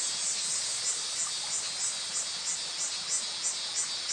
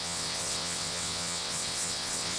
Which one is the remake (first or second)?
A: second